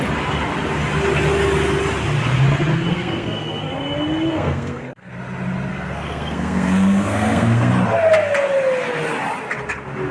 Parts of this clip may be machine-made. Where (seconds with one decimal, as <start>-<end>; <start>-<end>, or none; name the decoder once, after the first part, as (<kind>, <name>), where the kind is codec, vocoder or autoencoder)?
2.9-3.7 (codec, SNAC); 4.3-5.1; 5.7-7.7